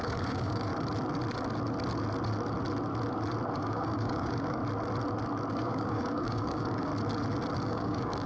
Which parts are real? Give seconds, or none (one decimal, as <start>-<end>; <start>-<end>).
0.7-3.6; 4.6-5.5; 6.9-7.6